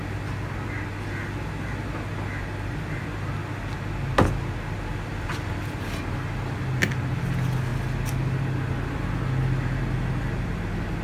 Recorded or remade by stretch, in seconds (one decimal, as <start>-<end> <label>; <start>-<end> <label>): 0.0-11.0 recorded